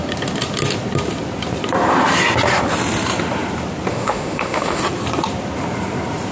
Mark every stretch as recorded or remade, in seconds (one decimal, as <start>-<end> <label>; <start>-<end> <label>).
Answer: 0.0-3.9 recorded; 3.9-4.8 remade; 4.8-6.3 recorded